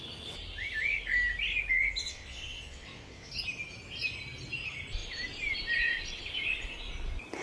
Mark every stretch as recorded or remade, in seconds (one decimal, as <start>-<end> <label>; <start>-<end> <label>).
0.0-2.0 recorded; 2.0-3.3 remade; 3.3-7.4 recorded